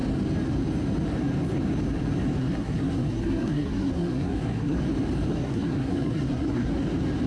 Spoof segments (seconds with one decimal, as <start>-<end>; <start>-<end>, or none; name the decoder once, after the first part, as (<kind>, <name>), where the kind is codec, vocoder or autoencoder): 2.4-4.8 (codec, SNAC); 5.3-6.7